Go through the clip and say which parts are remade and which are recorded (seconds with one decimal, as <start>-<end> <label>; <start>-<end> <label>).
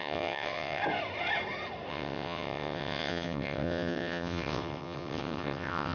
0.0-0.8 remade; 0.8-1.9 recorded; 1.9-5.9 remade